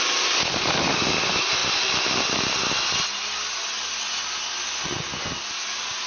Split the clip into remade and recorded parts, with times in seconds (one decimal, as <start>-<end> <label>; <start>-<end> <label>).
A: 0.0-6.1 recorded

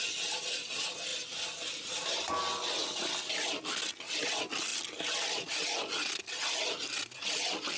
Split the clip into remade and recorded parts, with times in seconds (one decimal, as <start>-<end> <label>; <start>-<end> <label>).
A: 0.0-7.8 recorded

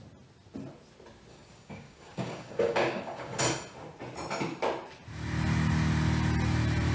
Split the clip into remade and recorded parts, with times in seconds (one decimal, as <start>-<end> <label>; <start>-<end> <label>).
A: 0.0-1.3 recorded; 1.3-3.4 remade; 3.4-6.9 recorded

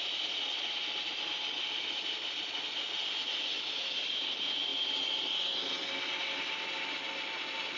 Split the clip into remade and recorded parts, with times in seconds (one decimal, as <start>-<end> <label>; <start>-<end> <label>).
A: 0.0-7.8 recorded

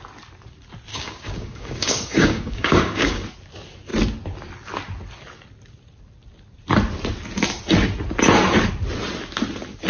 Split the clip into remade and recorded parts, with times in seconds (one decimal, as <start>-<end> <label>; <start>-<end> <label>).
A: 0.0-0.9 recorded; 0.9-3.2 remade; 3.2-9.9 recorded

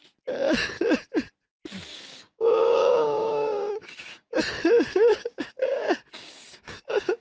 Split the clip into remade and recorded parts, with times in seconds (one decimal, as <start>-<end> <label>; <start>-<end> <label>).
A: 0.0-1.9 recorded; 1.9-4.4 remade; 4.4-4.9 recorded; 4.9-7.2 remade

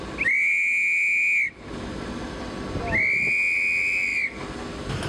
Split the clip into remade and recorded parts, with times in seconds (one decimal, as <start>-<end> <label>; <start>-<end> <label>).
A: 0.0-5.1 recorded